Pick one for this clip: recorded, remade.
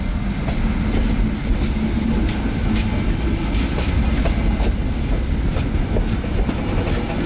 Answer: recorded